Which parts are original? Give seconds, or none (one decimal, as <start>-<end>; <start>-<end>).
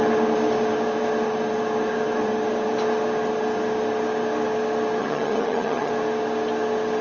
0.0-5.0; 5.9-7.0